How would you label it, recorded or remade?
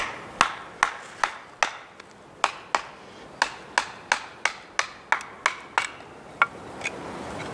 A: recorded